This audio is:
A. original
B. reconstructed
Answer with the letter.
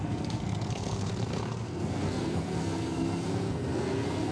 B